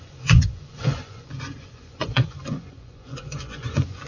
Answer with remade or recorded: remade